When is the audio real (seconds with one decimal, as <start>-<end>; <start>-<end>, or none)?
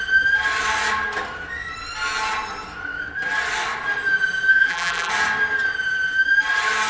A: 0.0-4.5; 5.1-6.9